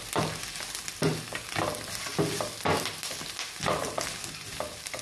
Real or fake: real